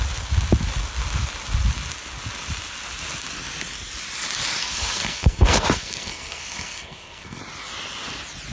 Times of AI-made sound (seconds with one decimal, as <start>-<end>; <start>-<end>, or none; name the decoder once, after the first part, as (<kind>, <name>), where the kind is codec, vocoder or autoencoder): 4.6-7.4 (codec, SNAC)